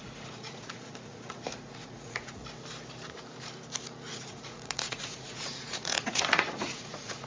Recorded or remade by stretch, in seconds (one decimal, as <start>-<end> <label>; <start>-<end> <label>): 0.0-2.4 remade; 2.4-4.1 recorded; 4.1-7.3 remade